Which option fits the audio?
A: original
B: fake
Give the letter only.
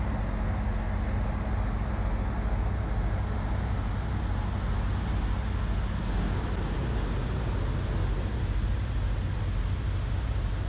A